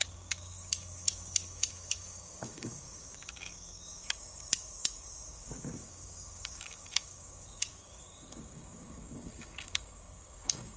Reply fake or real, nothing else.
fake